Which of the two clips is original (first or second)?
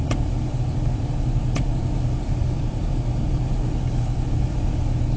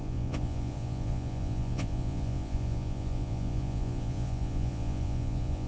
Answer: first